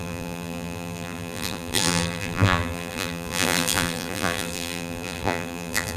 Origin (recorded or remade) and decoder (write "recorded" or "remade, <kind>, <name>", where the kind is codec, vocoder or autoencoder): remade, vocoder, BigVGAN v2